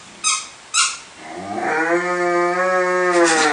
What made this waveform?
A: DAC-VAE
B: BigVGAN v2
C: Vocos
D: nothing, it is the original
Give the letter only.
D